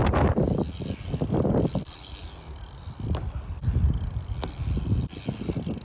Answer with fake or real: real